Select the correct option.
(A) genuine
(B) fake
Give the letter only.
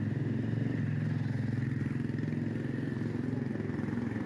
A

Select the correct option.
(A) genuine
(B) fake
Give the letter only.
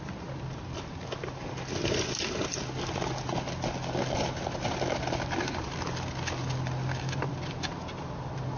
A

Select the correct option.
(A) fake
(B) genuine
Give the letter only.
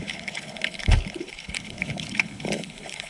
A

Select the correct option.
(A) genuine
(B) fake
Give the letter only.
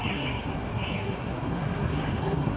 B